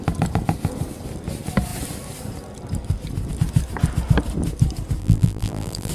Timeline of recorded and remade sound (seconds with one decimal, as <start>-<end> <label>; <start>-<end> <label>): 0.0-5.0 recorded; 5.0-5.9 remade